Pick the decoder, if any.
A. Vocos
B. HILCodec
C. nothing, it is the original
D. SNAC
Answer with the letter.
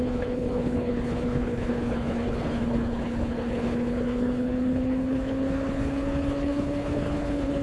B